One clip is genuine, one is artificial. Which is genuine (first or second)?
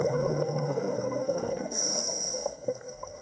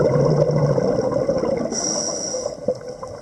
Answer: second